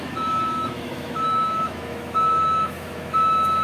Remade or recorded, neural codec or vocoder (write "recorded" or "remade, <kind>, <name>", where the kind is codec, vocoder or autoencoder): remade, autoencoder, DAC-VAE